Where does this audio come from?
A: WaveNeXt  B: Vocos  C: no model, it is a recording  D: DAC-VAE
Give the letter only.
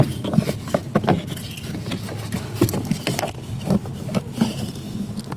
C